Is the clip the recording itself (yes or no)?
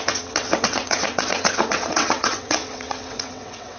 no